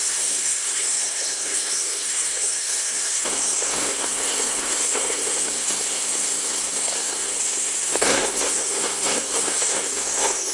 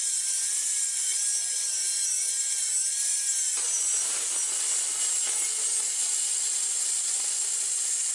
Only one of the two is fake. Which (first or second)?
first